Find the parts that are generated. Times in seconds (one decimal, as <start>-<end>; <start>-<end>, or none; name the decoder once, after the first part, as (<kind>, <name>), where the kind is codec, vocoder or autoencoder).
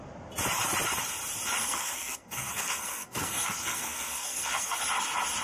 1.6-4.8 (codec, SNAC)